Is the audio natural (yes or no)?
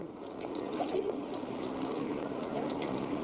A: no